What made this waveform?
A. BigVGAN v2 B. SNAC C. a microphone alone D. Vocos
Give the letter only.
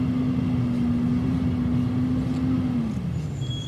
C